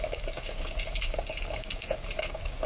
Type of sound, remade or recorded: remade